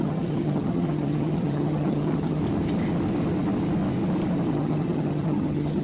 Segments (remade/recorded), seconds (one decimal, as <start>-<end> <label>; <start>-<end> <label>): 0.0-2.4 remade; 2.4-4.5 recorded; 4.5-5.8 remade